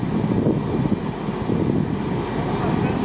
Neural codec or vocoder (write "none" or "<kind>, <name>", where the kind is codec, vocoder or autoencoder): none